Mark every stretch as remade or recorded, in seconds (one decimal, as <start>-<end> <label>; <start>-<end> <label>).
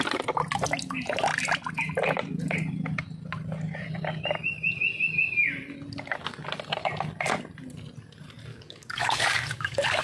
0.0-8.5 recorded; 8.5-10.0 remade